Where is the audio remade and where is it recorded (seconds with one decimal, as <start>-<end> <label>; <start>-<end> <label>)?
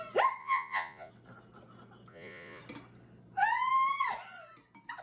0.0-0.4 recorded; 0.4-1.1 remade; 1.1-2.1 recorded; 2.1-2.6 remade; 2.6-5.0 recorded